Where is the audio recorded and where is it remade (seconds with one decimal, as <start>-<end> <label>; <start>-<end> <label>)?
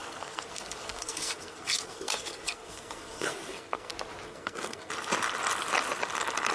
0.0-3.9 remade; 3.9-4.3 recorded; 4.3-4.9 remade; 4.9-6.5 recorded